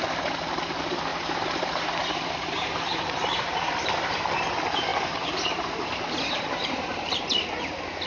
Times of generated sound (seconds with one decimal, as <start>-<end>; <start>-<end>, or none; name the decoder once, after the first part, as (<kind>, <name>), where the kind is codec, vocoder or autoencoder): 1.1-4.3 (vocoder, BigVGAN v2); 4.9-7.2